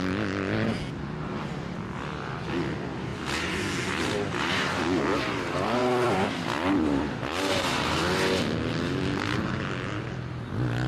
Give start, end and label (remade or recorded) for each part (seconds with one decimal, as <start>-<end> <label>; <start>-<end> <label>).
0.0-5.8 recorded; 5.8-7.0 remade; 7.0-10.9 recorded